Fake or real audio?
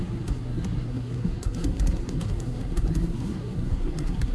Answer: fake